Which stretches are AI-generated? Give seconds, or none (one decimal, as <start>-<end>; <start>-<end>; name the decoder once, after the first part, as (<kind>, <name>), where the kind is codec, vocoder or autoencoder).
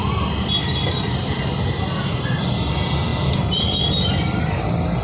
none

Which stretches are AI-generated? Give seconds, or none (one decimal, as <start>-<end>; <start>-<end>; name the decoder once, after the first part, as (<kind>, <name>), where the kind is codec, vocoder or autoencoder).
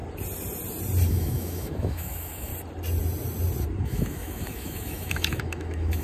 1.1-2.5 (autoencoder, DAC-VAE); 3.8-6.0